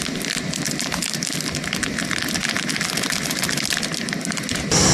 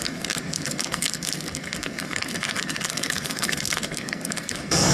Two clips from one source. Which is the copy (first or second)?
second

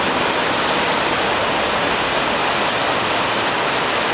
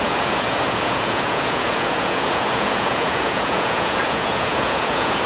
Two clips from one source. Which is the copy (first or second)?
second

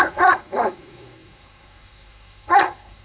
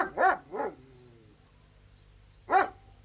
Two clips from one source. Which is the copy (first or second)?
first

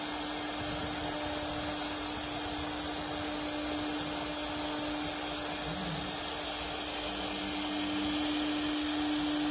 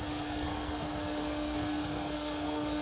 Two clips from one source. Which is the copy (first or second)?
second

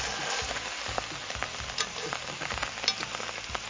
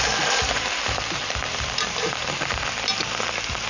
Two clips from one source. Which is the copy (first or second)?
second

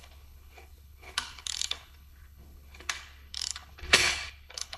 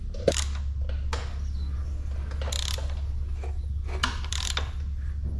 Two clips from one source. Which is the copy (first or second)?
first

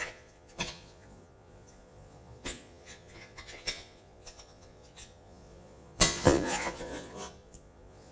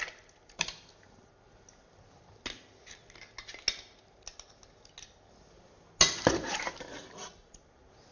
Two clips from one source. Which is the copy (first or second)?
first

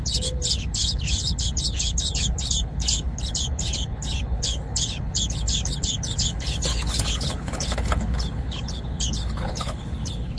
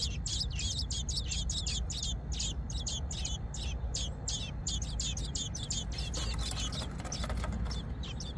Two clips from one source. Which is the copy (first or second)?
first